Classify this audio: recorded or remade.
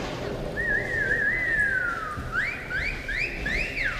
recorded